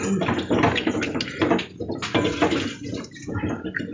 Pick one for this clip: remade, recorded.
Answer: recorded